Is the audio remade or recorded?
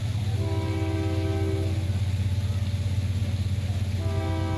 recorded